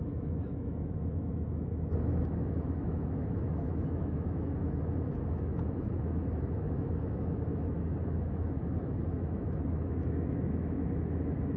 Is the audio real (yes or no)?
no